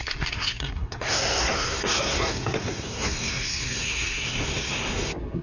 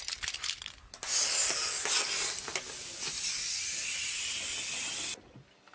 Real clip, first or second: second